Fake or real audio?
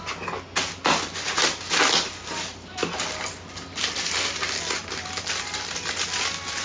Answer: real